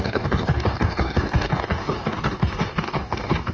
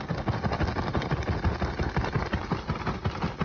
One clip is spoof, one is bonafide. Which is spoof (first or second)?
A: first